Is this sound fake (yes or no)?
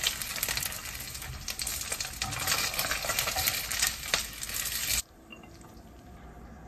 no